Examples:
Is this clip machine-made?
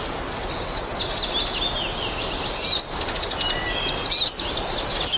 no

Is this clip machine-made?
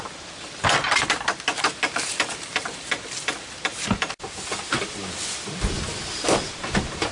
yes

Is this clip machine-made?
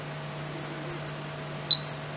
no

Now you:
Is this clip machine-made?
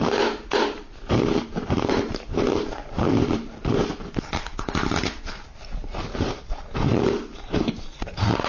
yes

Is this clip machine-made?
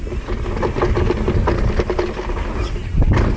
no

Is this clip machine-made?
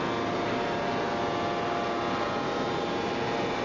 no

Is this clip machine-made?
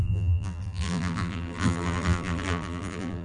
yes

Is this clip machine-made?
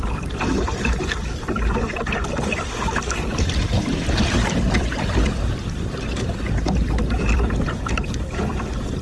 yes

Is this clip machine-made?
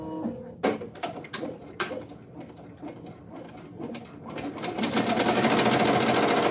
no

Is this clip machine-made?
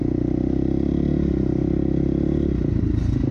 no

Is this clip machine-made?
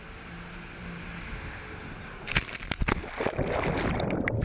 no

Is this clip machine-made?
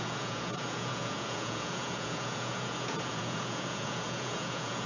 yes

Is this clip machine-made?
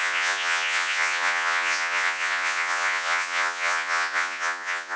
yes